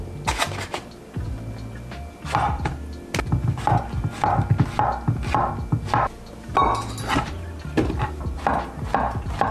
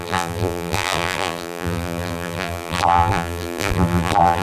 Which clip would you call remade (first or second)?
second